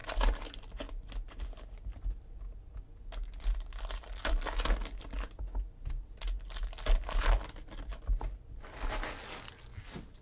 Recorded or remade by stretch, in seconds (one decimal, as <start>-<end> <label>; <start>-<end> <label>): 0.0-0.5 remade; 0.5-10.2 recorded